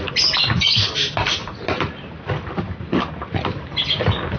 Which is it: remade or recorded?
recorded